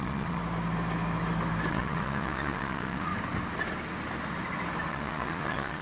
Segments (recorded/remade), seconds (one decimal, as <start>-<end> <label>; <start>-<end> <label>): 0.0-0.4 remade; 0.4-1.7 recorded; 1.7-3.1 remade; 3.1-4.9 recorded; 4.9-5.8 remade